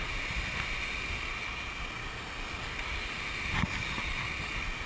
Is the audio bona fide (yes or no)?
yes